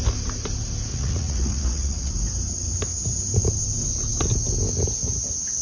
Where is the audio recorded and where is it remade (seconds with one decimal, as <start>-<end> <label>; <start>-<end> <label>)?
0.0-0.9 recorded; 0.9-2.1 remade; 2.1-5.6 recorded